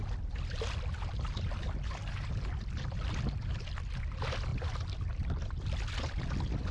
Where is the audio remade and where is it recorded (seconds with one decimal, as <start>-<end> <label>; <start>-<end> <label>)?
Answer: 0.0-4.5 recorded; 4.5-5.9 remade; 5.9-6.7 recorded